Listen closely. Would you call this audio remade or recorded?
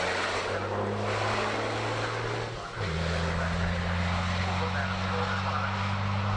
recorded